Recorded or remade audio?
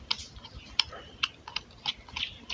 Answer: recorded